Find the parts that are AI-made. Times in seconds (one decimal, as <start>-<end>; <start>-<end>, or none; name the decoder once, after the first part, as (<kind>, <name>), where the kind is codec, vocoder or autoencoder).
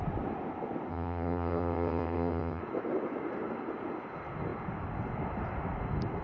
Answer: 0.9-2.6 (vocoder, HiFi-GAN)